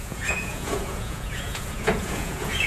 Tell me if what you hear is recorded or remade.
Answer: remade